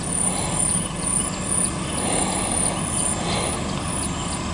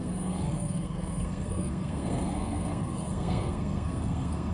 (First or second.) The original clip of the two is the first